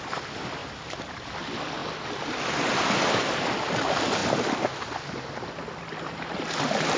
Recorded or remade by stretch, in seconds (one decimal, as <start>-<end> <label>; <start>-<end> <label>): 0.0-4.2 remade; 4.2-5.5 recorded; 5.5-7.0 remade